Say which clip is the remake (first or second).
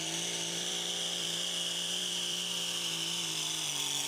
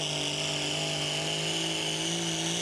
first